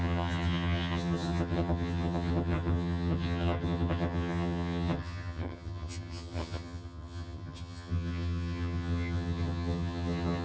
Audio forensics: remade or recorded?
remade